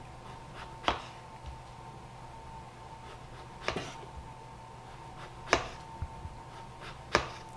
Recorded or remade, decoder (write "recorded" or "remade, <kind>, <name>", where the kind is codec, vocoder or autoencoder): recorded